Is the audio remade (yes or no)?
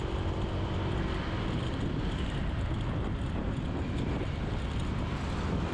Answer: yes